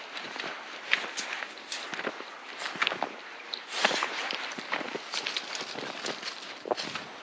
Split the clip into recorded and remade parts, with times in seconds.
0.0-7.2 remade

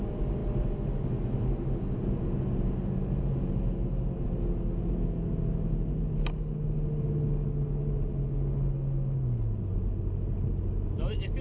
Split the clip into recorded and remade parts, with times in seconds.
0.0-11.4 recorded

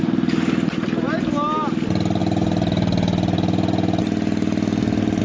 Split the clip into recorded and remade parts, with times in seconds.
0.0-5.2 recorded

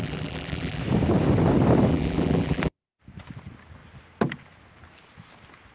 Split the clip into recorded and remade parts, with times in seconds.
0.0-0.8 remade; 0.8-1.9 recorded; 1.9-3.0 remade; 3.0-5.7 recorded

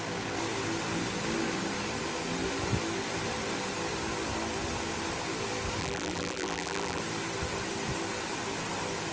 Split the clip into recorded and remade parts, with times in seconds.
0.0-5.8 recorded; 5.8-7.0 remade; 7.0-9.1 recorded

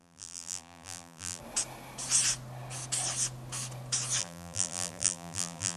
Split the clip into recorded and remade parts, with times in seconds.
0.0-1.4 remade; 1.4-4.2 recorded; 4.2-5.8 remade

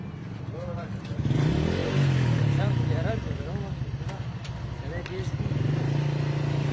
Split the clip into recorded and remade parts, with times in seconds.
0.0-6.7 recorded

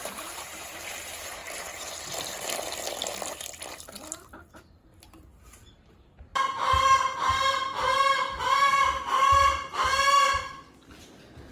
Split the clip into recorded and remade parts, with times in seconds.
0.0-1.4 remade; 1.4-4.5 recorded; 4.5-10.4 remade; 10.4-10.9 recorded; 10.9-11.5 remade